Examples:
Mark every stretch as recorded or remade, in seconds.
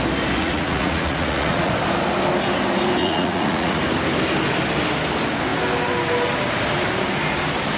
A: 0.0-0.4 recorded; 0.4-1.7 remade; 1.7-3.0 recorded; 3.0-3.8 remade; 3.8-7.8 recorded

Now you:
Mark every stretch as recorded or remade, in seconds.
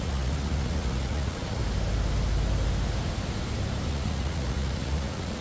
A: 0.0-1.6 remade; 1.6-3.9 recorded; 3.9-5.4 remade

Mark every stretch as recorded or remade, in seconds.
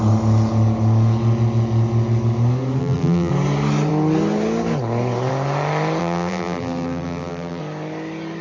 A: 0.0-2.8 recorded; 2.8-3.3 remade; 3.3-6.0 recorded; 6.0-7.6 remade; 7.6-8.4 recorded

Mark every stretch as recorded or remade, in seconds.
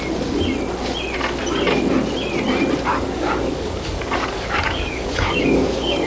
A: 0.0-2.9 recorded; 2.9-6.1 remade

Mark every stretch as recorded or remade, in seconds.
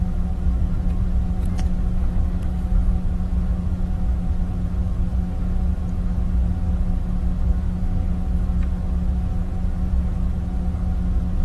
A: 0.0-11.4 recorded